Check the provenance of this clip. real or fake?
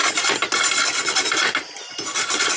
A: real